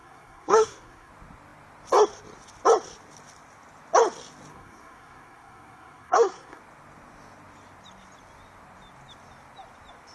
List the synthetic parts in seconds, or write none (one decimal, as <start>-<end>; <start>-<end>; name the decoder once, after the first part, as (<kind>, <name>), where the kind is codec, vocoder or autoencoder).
0.0-1.1 (codec, SNAC); 4.5-6.6